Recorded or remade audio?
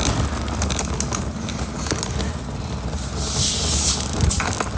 recorded